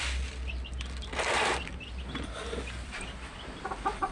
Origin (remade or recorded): remade